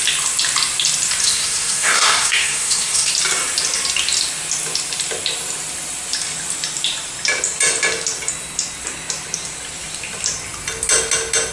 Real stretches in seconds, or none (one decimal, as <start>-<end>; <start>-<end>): 0.0-1.2; 3.1-11.5